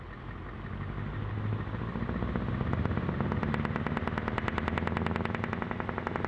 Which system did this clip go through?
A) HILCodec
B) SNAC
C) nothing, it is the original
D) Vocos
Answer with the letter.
C